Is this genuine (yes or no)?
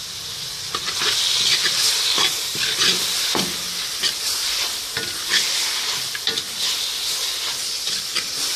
yes